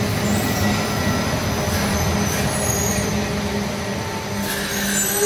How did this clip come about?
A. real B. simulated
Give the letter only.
A